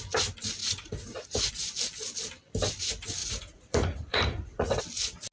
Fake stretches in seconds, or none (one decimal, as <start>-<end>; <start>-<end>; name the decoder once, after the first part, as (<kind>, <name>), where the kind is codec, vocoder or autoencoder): 0.6-1.5 (vocoder, Vocos); 3.2-4.8